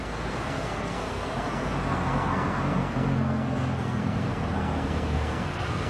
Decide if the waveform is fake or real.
fake